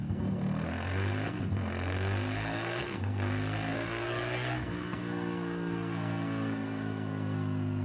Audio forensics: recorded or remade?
remade